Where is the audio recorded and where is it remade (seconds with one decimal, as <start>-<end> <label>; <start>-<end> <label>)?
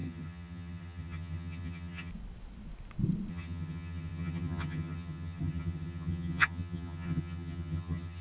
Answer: 0.0-2.1 remade; 2.1-3.3 recorded; 3.3-8.2 remade